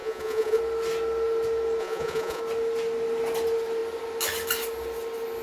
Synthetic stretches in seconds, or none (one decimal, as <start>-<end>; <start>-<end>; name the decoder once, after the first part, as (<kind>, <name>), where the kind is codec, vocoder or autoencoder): 0.0-0.6 (vocoder, Vocos); 1.8-2.4